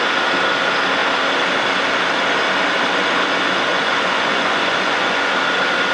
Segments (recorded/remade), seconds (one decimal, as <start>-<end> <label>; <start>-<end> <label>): 0.0-3.7 recorded; 3.7-5.3 remade; 5.3-5.9 recorded

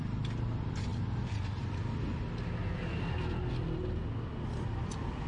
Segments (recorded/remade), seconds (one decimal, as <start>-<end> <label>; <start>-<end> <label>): 0.0-5.3 recorded

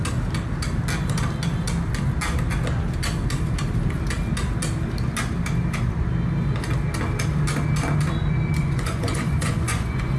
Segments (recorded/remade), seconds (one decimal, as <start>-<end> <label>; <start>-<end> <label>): 0.0-8.6 recorded; 8.6-10.2 remade

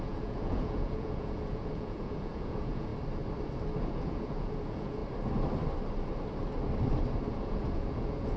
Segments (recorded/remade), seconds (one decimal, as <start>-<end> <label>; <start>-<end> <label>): 0.0-2.9 remade; 2.9-3.8 recorded; 3.8-5.0 remade; 5.0-7.3 recorded; 7.3-8.4 remade

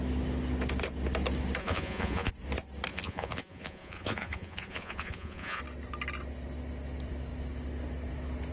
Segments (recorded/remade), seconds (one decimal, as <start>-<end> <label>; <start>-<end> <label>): 0.0-1.6 recorded; 1.6-2.3 remade; 2.3-2.9 recorded; 2.9-5.6 remade; 5.6-8.5 recorded